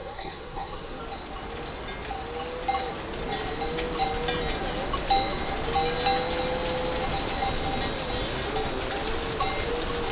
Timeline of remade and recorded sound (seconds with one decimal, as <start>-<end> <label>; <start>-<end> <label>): 0.0-1.0 remade; 1.0-10.1 recorded